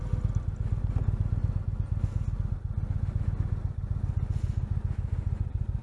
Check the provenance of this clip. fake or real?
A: real